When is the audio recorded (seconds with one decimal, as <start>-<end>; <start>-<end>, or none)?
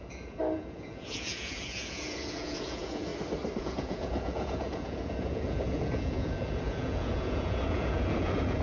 3.1-3.6